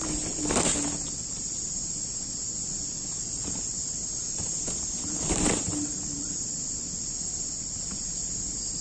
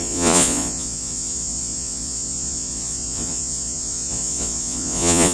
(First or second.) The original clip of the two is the first